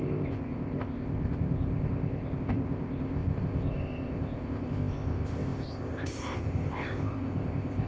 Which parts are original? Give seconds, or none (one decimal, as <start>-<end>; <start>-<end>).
none